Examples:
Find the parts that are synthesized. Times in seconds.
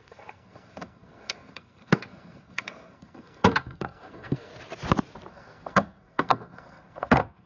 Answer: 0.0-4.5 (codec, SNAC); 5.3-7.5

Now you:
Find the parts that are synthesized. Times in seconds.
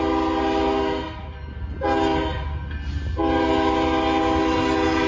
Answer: none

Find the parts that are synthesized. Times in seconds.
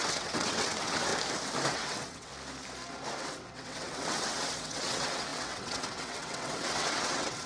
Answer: 0.0-1.1 (vocoder, WaveNeXt); 1.7-2.3; 3.2-7.5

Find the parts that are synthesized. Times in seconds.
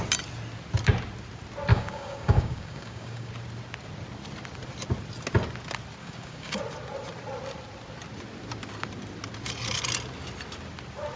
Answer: 1.7-3.3 (codec, DAC); 6.0-6.6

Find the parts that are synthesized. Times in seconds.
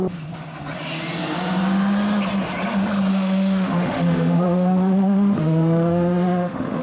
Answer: 3.1-6.8 (autoencoder, DAC-VAE)